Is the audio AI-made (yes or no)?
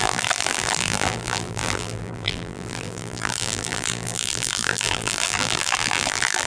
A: yes